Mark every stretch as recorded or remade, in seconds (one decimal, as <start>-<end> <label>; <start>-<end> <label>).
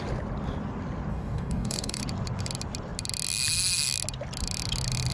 0.0-1.1 recorded; 1.1-2.0 remade; 2.0-5.1 recorded